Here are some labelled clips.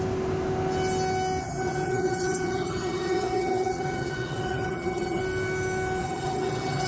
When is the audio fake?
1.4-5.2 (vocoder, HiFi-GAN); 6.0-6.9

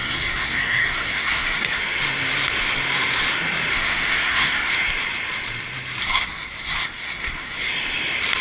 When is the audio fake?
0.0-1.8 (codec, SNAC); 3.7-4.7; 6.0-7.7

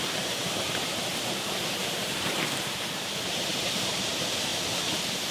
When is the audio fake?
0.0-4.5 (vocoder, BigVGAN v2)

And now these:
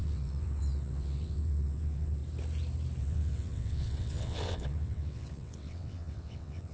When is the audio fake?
0.0-2.2 (vocoder, WaveNeXt); 3.0-6.7

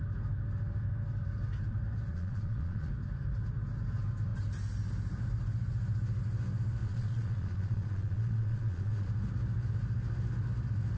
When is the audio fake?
2.1-2.9 (vocoder, Vocos); 6.8-9.1

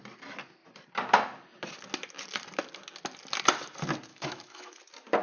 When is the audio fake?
4.1-4.8 (autoencoder, DAC-VAE)